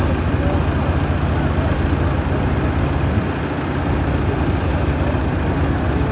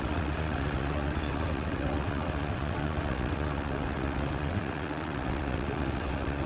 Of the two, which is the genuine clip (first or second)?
first